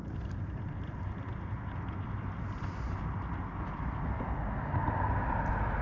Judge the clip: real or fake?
real